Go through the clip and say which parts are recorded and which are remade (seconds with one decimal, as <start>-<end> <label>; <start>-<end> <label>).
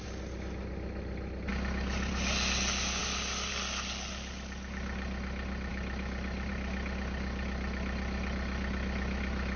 0.0-9.6 recorded